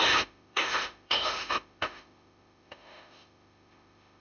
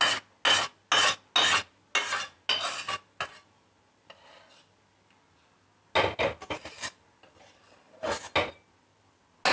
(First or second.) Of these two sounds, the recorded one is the second